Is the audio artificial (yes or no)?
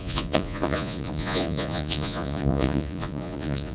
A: yes